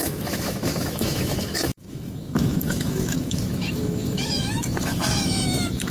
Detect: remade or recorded remade